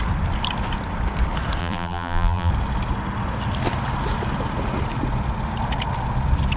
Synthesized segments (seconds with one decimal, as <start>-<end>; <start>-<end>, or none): 1.6-2.5